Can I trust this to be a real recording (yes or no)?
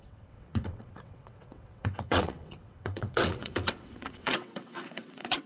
no